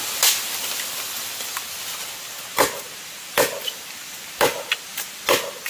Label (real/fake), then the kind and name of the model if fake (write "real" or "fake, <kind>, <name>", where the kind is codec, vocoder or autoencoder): real